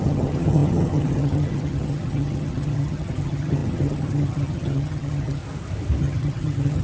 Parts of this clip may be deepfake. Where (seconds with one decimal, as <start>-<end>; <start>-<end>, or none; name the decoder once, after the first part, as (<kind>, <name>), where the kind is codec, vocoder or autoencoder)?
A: 0.0-5.4 (vocoder, HiFi-GAN); 6.0-6.8